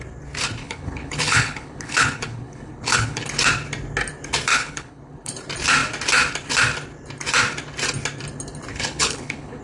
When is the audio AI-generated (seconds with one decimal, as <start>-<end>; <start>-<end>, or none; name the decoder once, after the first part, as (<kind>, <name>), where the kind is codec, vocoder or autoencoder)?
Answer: 0.6-3.3 (codec, HILCodec); 4.5-5.3; 8.7-9.6